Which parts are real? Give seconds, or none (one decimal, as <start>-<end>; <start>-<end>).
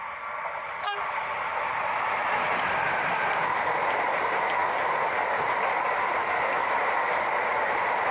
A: 0.0-8.1